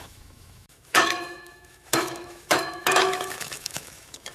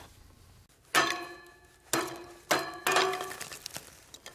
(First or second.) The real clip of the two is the second